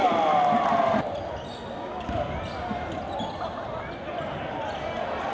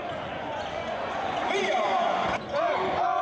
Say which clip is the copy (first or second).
second